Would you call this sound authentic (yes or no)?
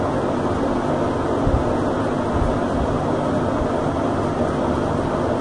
yes